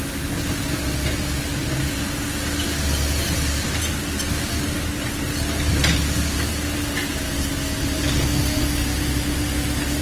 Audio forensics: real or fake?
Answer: real